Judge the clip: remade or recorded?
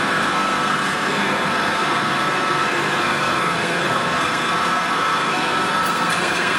remade